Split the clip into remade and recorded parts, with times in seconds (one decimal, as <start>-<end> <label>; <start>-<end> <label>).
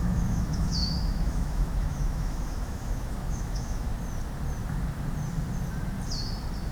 0.0-3.9 remade; 3.9-6.7 recorded